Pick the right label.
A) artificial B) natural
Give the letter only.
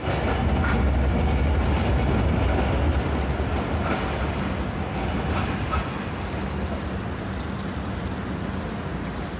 B